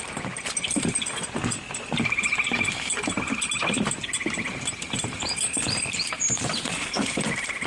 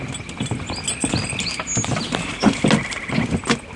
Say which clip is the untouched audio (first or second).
second